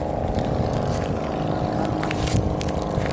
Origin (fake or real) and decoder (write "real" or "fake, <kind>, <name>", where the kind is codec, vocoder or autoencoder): real